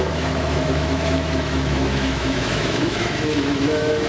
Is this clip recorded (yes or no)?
no